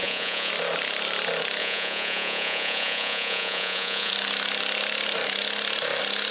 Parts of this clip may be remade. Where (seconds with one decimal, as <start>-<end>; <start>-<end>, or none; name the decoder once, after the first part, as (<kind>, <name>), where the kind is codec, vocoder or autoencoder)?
0.0-0.5 (vocoder, Vocos); 1.6-4.1